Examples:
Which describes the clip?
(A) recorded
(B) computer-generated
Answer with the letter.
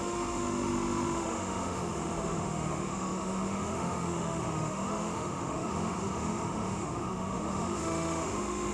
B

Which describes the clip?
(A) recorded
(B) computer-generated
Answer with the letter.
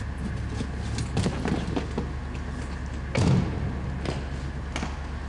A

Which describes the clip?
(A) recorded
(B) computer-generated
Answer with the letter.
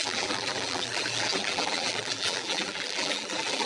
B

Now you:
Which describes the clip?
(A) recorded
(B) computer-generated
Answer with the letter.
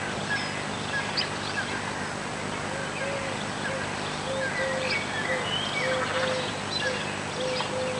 A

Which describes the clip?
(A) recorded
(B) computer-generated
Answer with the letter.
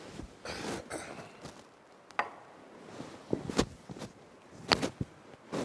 A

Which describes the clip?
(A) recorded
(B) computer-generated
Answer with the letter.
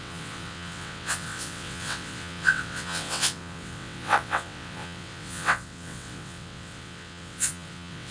B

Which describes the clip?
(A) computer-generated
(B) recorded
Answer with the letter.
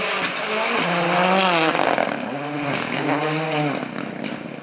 B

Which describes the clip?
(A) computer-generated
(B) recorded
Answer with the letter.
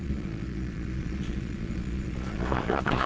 A